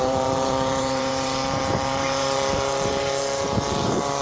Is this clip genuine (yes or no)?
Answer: no